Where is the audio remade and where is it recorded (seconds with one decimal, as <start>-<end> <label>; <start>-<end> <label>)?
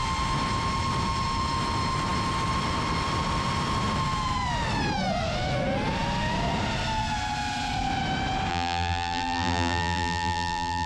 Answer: 0.0-8.5 recorded; 8.5-10.9 remade